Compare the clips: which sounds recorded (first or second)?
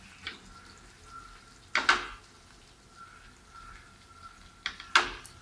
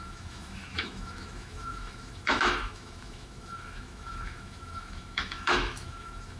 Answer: first